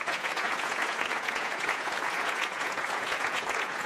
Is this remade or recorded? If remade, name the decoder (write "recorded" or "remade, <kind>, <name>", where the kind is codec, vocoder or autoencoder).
remade, vocoder, Vocos